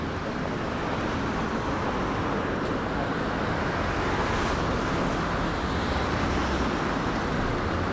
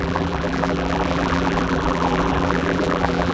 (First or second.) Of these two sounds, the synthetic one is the second